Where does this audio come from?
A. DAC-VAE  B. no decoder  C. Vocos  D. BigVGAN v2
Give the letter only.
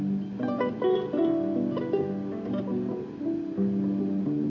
B